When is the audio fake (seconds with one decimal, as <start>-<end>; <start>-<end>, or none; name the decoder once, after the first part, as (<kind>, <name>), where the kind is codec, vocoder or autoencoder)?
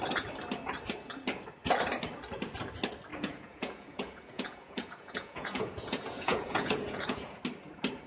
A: 3.1-7.4 (vocoder, Vocos)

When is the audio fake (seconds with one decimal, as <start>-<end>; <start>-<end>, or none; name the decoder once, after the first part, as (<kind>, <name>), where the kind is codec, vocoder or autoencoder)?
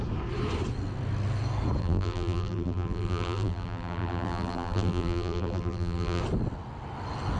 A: 1.8-6.2 (vocoder, BigVGAN v2)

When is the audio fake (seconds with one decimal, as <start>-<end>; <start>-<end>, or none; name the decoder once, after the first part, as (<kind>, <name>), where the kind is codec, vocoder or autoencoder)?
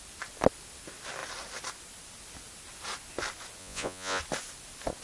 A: 3.6-4.2 (vocoder, Vocos)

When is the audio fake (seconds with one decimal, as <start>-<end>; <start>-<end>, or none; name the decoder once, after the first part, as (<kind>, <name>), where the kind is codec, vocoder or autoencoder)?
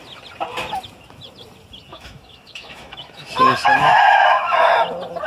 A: 1.9-4.7 (autoencoder, DAC-VAE)